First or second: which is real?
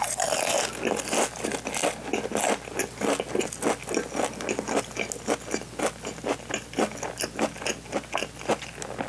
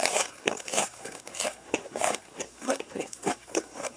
first